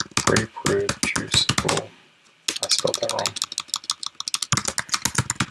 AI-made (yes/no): no